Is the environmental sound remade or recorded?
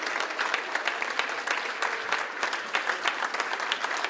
recorded